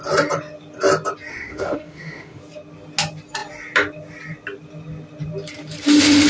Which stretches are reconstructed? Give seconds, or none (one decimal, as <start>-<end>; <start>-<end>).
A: 1.3-2.4